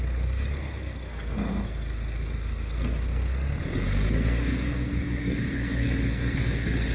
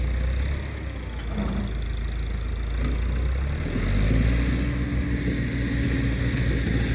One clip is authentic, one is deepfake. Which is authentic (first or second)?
second